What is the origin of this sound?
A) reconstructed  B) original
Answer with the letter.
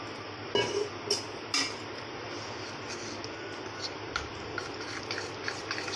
B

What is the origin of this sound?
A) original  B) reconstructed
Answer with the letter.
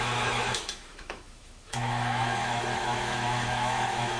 B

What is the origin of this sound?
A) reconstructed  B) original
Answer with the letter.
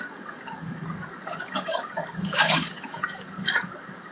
A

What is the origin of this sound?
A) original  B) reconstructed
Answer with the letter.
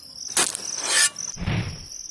A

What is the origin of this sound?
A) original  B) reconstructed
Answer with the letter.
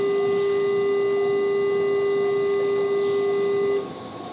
A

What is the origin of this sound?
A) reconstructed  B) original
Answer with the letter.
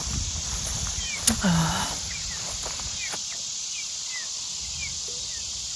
B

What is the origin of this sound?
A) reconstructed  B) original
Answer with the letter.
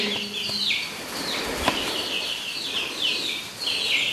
A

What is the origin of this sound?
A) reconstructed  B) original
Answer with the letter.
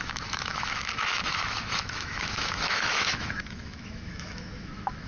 A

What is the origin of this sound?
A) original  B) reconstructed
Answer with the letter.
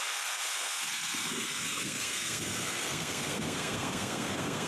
B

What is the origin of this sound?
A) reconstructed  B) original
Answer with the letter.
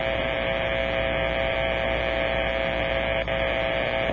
B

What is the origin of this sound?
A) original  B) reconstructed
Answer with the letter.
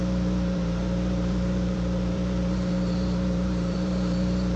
B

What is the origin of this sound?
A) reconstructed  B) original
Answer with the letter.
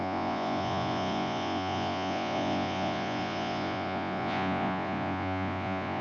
A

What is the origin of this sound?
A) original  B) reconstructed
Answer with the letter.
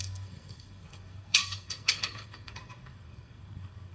B